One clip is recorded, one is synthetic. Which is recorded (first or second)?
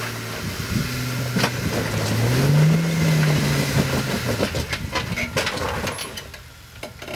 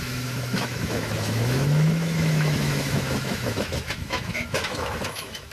first